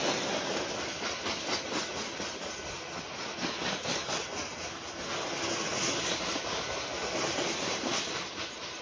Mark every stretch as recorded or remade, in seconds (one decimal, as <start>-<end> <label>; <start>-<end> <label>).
0.0-8.8 recorded